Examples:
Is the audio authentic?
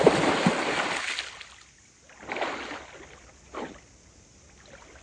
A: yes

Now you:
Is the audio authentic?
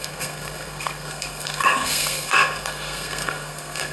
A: no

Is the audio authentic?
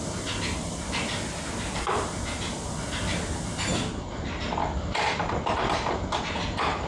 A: yes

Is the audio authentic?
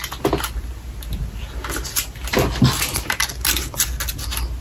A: yes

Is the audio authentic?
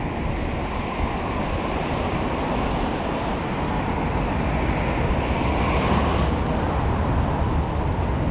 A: yes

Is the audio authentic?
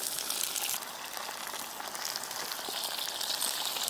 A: yes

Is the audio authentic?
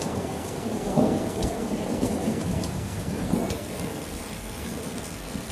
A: no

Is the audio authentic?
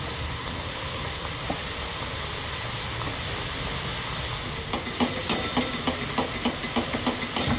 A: yes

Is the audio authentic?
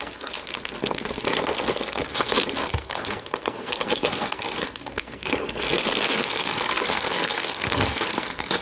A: no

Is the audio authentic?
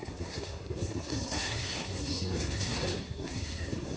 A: no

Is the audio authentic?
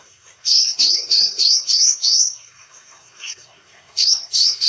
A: no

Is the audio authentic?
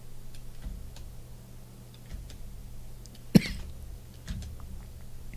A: yes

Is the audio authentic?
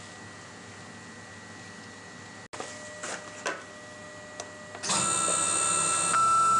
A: yes